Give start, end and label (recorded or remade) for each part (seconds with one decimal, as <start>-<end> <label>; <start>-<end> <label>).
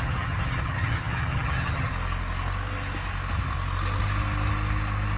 0.0-1.9 remade; 1.9-5.2 recorded